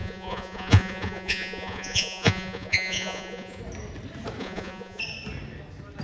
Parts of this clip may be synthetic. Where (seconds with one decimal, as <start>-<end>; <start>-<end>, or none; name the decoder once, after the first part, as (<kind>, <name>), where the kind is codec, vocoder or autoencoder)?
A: 0.0-3.6 (vocoder, Vocos); 4.4-5.0